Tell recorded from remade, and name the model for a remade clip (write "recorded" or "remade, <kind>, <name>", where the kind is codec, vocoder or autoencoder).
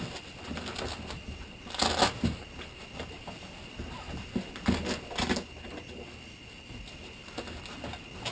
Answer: recorded